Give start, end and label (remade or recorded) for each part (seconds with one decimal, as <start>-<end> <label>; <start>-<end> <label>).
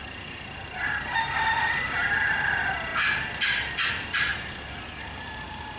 0.0-1.5 recorded; 1.5-2.9 remade; 2.9-3.9 recorded; 3.9-4.3 remade; 4.3-5.0 recorded; 5.0-5.8 remade